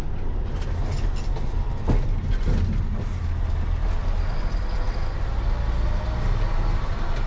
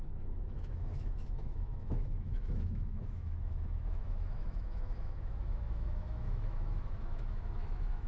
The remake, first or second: second